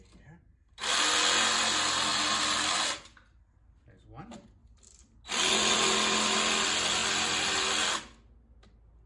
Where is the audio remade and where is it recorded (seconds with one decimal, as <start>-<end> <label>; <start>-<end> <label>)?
0.0-9.1 recorded